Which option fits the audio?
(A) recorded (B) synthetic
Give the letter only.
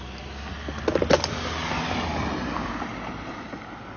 A